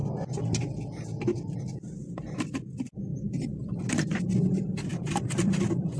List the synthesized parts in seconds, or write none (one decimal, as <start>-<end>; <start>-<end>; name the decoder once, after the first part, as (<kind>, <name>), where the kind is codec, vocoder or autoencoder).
3.1-4.2 (vocoder, BigVGAN v2); 4.9-6.0